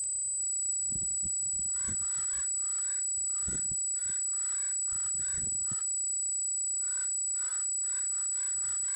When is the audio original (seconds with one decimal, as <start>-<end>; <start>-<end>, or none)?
0.0-9.0